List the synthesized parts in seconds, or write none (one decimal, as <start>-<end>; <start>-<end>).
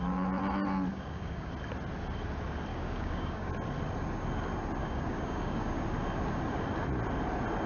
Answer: 0.9-1.5; 2.7-3.5; 4.8-5.8